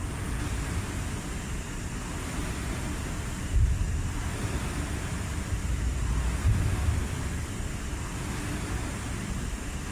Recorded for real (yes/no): yes